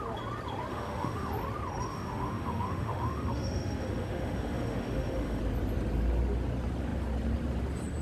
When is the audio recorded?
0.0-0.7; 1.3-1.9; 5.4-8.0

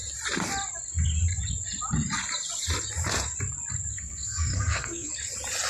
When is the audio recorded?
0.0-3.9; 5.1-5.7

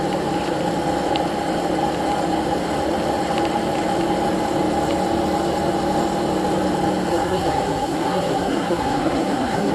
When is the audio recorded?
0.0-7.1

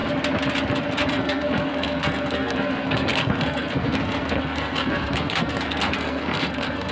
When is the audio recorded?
0.0-1.1

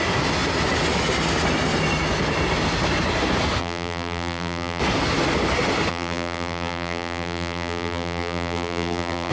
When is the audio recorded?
0.0-3.6; 4.8-5.9

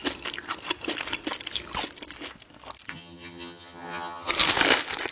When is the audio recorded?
0.0-2.9; 4.3-5.1